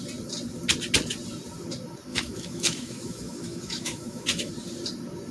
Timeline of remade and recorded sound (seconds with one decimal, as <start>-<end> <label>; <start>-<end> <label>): 0.0-2.1 recorded; 2.1-4.5 remade; 4.5-5.3 recorded